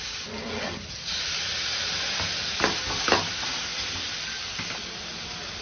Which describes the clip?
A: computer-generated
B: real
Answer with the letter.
B